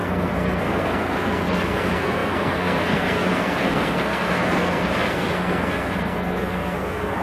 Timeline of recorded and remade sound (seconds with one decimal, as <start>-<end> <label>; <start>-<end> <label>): 0.0-7.2 remade